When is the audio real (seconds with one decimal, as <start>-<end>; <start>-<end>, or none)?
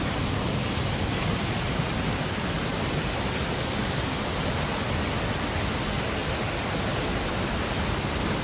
0.0-8.4